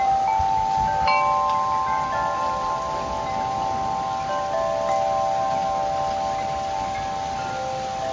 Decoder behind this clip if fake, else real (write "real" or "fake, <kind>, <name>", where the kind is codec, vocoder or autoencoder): real